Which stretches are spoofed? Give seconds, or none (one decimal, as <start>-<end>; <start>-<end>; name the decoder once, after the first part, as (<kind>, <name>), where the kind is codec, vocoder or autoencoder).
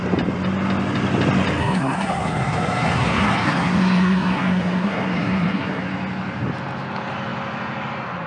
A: 1.6-5.8 (codec, SNAC)